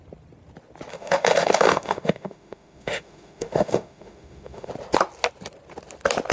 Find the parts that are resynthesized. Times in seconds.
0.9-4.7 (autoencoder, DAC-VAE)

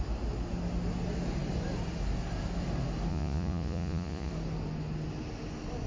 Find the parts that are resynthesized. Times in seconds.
3.1-4.3 (vocoder, Vocos)